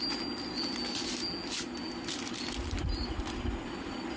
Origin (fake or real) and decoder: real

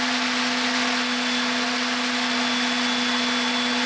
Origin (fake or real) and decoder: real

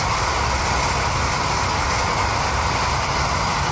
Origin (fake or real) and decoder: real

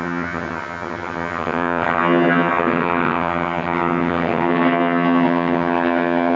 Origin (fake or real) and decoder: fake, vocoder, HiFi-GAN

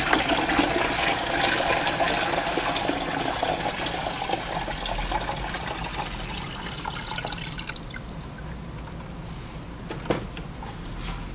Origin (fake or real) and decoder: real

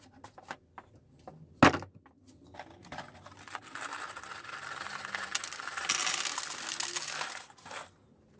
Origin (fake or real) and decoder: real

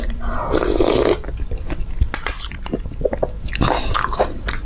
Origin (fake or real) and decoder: real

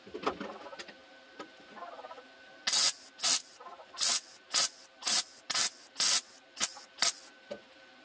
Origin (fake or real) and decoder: real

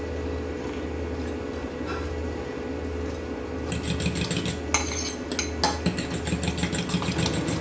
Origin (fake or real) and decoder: real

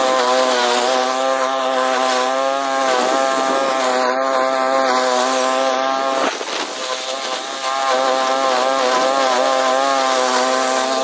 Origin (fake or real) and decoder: real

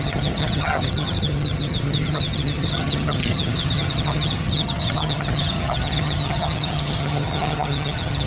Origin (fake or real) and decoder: fake, vocoder, HiFi-GAN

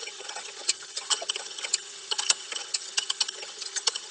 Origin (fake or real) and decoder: fake, vocoder, HiFi-GAN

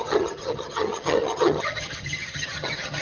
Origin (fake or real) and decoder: fake, vocoder, HiFi-GAN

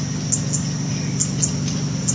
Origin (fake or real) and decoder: real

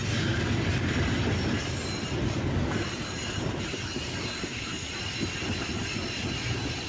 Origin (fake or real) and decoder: real